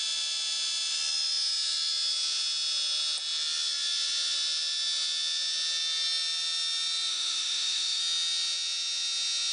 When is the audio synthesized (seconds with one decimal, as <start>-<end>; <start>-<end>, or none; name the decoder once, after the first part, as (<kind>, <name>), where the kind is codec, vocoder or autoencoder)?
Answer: 7.1-8.0 (autoencoder, DAC-VAE)